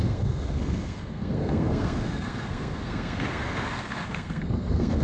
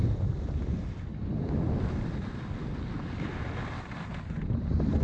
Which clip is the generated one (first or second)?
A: first